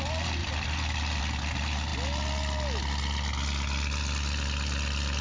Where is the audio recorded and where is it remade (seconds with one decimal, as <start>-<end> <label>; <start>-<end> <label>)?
0.0-0.4 recorded; 0.4-1.2 remade; 1.2-5.2 recorded